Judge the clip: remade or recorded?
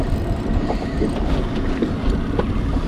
recorded